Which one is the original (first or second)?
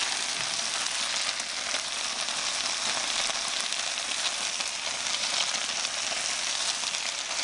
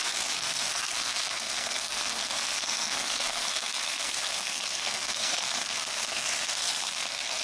first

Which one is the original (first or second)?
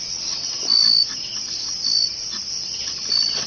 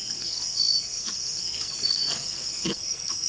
first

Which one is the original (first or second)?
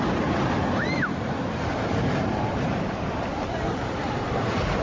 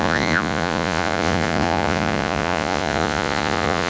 first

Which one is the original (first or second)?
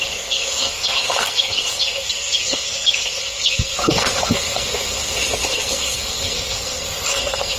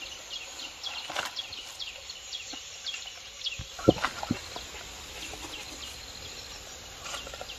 second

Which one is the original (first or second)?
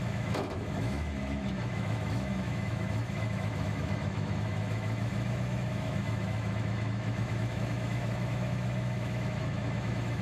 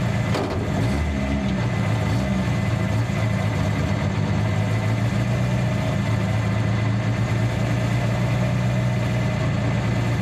second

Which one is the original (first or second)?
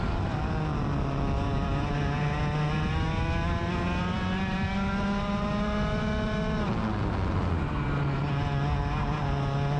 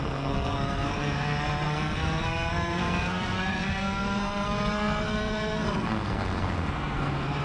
first